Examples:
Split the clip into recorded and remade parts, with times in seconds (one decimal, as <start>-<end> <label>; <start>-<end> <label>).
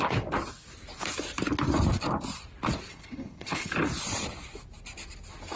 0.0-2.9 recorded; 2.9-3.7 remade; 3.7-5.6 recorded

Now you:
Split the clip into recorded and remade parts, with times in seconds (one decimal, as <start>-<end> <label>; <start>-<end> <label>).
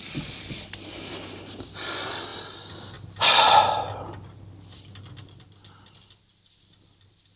0.0-7.4 recorded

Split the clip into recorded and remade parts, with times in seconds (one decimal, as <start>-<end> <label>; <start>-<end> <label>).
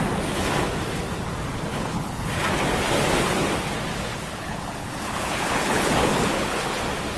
0.0-1.7 recorded; 1.7-2.3 remade; 2.3-4.1 recorded; 4.1-6.8 remade; 6.8-7.2 recorded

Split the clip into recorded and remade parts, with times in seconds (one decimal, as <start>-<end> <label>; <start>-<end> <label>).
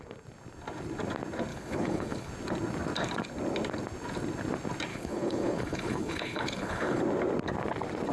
0.0-1.5 recorded; 1.5-2.3 remade; 2.3-4.9 recorded; 4.9-7.0 remade; 7.0-8.1 recorded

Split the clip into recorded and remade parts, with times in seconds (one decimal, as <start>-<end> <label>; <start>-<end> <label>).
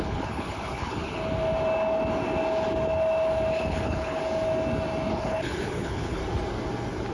0.0-1.2 remade; 1.2-3.5 recorded; 3.5-4.2 remade; 4.2-5.1 recorded; 5.1-6.2 remade; 6.2-7.1 recorded